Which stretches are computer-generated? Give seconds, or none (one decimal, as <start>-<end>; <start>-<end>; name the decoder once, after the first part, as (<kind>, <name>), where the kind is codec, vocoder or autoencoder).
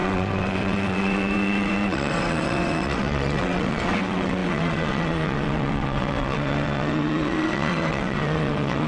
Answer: 0.0-8.9 (vocoder, WaveNeXt)